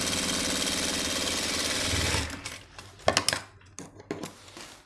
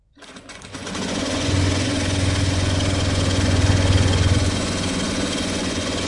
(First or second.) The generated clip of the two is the second